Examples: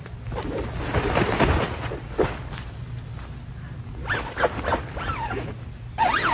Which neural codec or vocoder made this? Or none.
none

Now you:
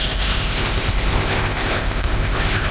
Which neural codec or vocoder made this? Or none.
codec, ZipCodec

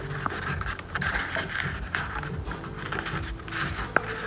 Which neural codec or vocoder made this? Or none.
none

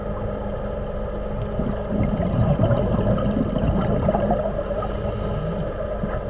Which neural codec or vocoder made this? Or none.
none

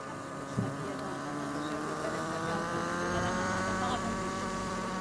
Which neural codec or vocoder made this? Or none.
vocoder, BigVGAN v2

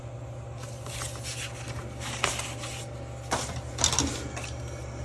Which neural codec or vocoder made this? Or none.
none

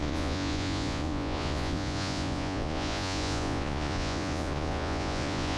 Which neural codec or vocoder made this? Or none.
vocoder, Vocos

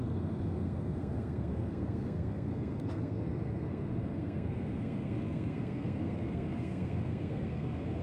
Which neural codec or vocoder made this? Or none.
codec, SNAC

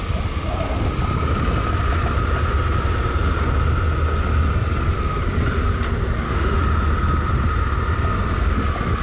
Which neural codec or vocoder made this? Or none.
none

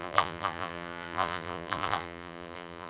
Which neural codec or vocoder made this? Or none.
vocoder, BigVGAN v2